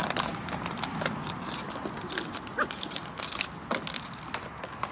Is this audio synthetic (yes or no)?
no